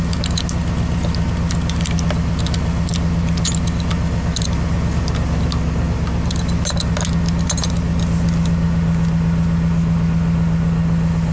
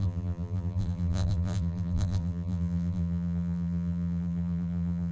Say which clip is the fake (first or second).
second